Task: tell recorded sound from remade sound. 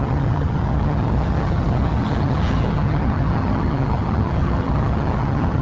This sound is remade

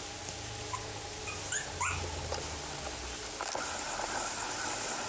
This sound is recorded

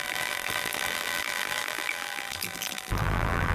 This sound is remade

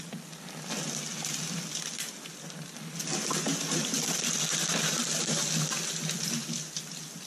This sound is recorded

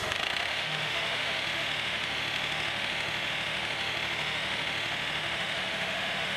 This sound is remade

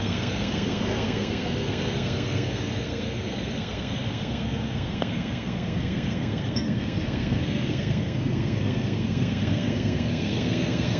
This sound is remade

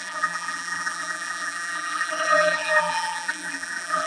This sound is remade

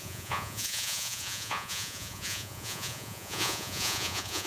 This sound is remade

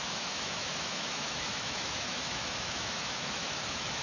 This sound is remade